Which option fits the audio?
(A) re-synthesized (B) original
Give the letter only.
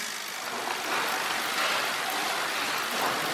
B